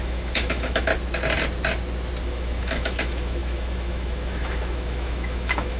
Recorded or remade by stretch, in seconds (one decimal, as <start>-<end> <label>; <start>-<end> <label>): 0.0-0.9 remade; 0.9-2.2 recorded; 2.2-5.8 remade